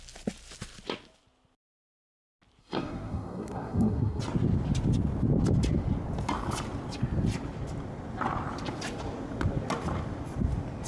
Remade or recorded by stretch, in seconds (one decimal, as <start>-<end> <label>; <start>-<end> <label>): 0.0-2.6 recorded; 2.6-4.2 remade; 4.2-10.9 recorded